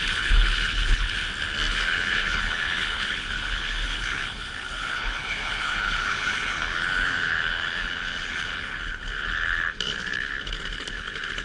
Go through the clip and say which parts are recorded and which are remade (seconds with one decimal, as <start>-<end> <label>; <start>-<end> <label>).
0.0-1.2 remade; 1.2-1.7 recorded; 1.7-11.4 remade